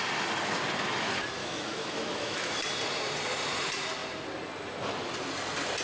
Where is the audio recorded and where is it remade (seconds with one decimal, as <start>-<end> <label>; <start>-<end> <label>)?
0.0-1.4 recorded; 1.4-2.6 remade; 2.6-5.8 recorded

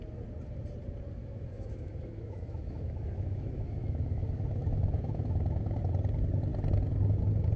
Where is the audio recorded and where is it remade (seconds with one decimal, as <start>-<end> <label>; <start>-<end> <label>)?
0.0-1.2 recorded; 1.2-5.8 remade; 5.8-7.6 recorded

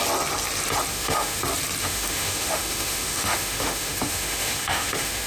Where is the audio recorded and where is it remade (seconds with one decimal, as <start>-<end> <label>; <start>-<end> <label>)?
0.0-0.9 recorded; 0.9-1.4 remade; 1.4-1.8 recorded; 1.8-5.3 remade

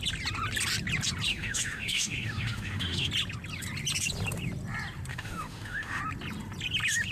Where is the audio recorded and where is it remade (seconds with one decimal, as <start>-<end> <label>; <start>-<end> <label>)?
0.0-1.3 recorded; 1.3-3.1 remade; 3.1-5.1 recorded; 5.1-6.0 remade; 6.0-7.1 recorded

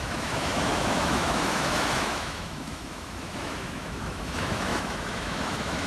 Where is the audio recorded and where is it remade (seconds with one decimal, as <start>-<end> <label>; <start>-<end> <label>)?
0.0-5.9 remade